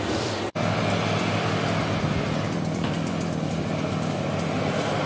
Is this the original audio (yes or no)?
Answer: yes